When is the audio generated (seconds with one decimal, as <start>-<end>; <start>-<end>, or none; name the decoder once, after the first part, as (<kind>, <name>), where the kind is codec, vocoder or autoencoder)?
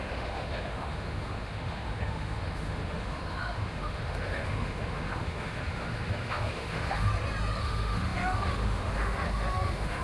0.0-7.1 (autoencoder, DAC-VAE); 7.6-10.0